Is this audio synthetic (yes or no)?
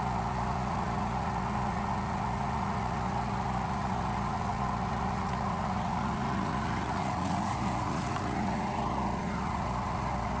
yes